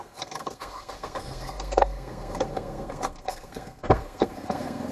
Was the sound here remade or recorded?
remade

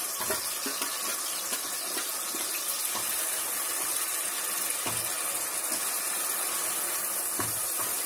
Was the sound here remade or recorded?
recorded